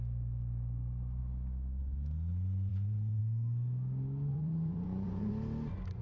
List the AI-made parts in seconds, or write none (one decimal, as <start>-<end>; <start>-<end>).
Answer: 2.7-3.2; 4.3-5.3